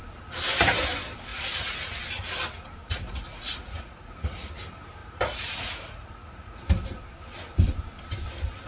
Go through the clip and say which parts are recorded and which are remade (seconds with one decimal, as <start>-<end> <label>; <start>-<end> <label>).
0.0-1.3 recorded; 1.3-2.0 remade; 2.0-2.8 recorded; 2.8-4.5 remade; 4.5-5.0 recorded; 5.0-6.6 remade; 6.6-8.7 recorded